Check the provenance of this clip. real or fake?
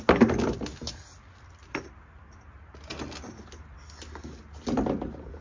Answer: real